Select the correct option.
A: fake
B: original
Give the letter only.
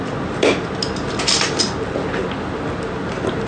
B